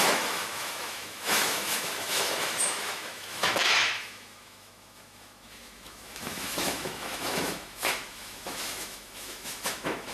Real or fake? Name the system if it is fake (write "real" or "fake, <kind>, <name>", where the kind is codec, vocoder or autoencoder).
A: fake, autoencoder, DAC-VAE